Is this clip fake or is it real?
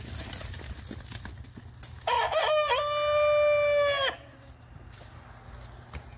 real